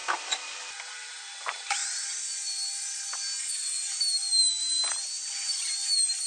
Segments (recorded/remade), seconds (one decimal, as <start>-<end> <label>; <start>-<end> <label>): 0.0-1.1 recorded; 1.1-1.8 remade; 1.8-3.4 recorded; 3.4-4.8 remade; 4.8-5.4 recorded; 5.4-6.3 remade